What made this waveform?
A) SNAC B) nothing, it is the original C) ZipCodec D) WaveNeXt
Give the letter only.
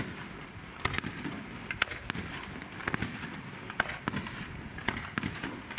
B